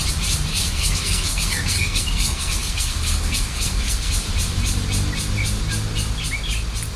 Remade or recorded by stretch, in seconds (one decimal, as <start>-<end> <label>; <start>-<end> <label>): 0.0-0.5 recorded; 0.5-4.1 remade; 4.1-7.0 recorded